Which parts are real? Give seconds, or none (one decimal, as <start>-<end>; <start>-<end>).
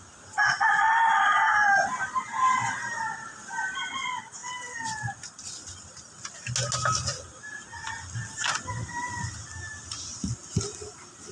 0.0-11.3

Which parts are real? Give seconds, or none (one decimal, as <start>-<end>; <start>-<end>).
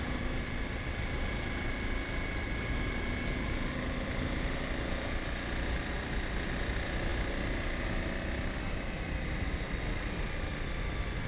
0.0-11.3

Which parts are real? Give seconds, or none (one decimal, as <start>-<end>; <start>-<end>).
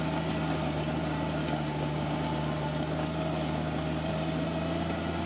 0.0-1.4; 2.2-5.3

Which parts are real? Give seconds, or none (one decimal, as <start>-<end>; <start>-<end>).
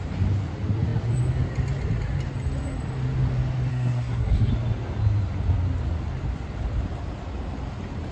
0.0-3.7; 4.5-8.1